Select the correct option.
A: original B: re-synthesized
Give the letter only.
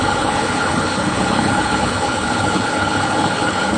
B